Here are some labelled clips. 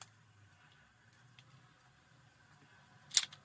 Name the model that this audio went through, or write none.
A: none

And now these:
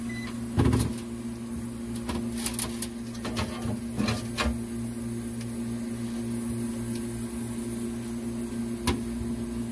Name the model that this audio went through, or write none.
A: none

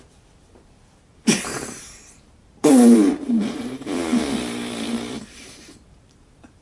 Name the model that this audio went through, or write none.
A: vocoder, BigVGAN v2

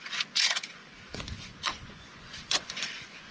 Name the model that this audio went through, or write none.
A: vocoder, Vocos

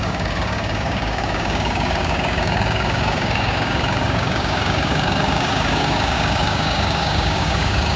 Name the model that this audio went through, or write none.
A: codec, DAC